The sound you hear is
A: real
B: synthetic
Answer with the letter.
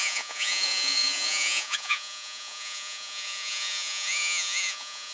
B